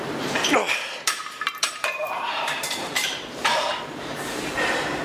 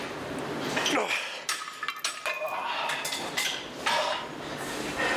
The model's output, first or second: first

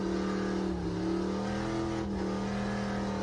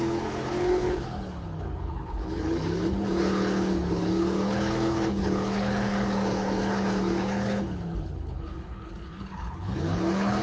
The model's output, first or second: second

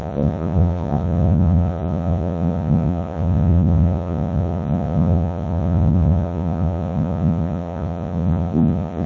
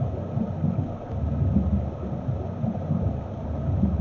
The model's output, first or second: first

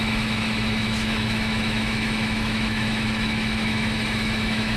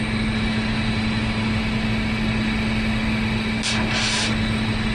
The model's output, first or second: first